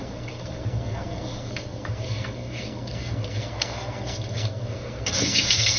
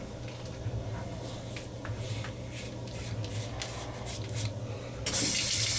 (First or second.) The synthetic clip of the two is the first